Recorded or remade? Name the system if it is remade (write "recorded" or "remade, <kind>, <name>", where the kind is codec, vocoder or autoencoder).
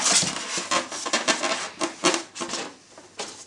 recorded